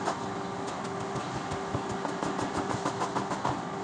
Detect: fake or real real